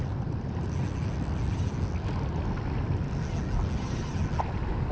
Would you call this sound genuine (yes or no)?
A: yes